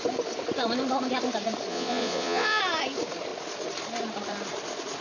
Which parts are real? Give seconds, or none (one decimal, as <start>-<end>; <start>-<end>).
0.0-1.7; 2.6-5.0